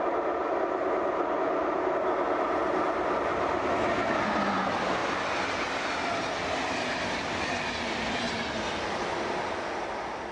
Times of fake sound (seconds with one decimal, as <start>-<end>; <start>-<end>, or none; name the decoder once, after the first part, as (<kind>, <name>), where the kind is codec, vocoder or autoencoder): none